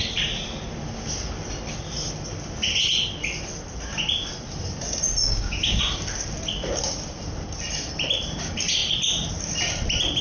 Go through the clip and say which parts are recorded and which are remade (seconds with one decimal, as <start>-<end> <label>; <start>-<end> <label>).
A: 0.0-5.2 recorded; 5.2-5.8 remade; 5.8-10.2 recorded